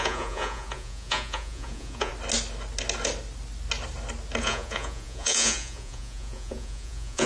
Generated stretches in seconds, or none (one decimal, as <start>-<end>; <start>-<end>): 0.0-2.1; 4.4-7.3

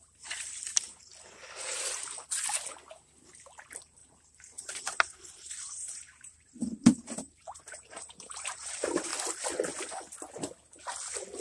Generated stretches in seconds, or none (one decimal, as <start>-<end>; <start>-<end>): 0.0-1.1; 3.6-9.1

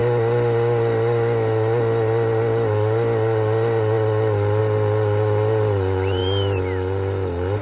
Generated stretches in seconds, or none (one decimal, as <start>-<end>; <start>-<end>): none